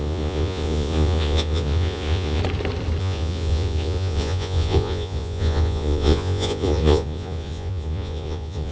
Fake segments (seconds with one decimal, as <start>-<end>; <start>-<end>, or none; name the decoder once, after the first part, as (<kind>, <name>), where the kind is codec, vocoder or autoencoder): 0.0-2.4 (vocoder, Vocos); 3.0-8.7